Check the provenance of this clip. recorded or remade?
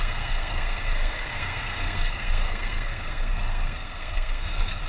remade